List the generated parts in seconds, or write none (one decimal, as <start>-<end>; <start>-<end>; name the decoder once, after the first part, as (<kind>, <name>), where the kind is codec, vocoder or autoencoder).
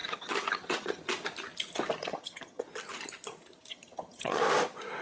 0.0-1.0 (vocoder, HiFi-GAN); 2.0-2.6; 3.7-4.4